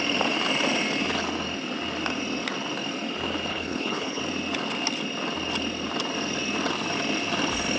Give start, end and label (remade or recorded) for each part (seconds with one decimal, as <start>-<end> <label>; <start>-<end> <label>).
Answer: 0.0-3.5 recorded; 3.5-4.2 remade; 4.2-7.8 recorded